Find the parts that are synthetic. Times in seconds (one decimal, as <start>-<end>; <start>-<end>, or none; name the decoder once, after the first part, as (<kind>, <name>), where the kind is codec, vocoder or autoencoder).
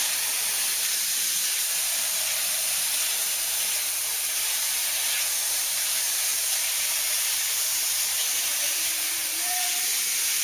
0.0-1.4 (vocoder, BigVGAN v2); 4.2-4.8; 5.5-10.4